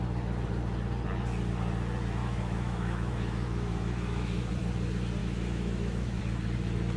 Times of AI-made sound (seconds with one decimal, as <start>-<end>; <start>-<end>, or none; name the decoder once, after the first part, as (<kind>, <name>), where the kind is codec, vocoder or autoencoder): 2.2-4.5 (autoencoder, DAC-VAE); 5.2-6.2

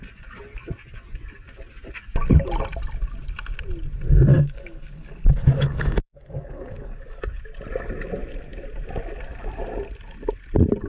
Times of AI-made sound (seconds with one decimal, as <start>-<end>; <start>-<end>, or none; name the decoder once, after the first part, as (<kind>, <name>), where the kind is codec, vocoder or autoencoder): 4.3-7.4 (codec, DAC)

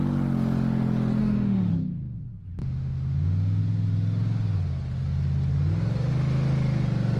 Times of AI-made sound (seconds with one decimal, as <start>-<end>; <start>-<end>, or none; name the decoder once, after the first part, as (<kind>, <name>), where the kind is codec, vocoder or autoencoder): 1.2-1.7 (autoencoder, DAC-VAE); 2.6-3.6

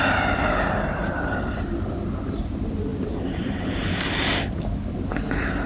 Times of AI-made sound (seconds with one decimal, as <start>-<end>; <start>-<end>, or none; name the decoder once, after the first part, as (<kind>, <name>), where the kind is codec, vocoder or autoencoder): none

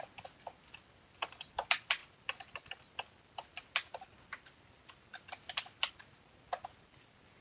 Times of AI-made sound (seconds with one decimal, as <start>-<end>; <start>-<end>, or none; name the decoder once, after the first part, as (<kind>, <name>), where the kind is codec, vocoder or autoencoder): none

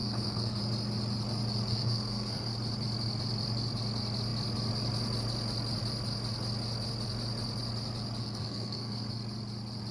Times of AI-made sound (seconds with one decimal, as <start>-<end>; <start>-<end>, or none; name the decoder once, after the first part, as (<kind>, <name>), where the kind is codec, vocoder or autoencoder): 0.0-0.6 (codec, SNAC); 1.7-2.5; 8.2-9.1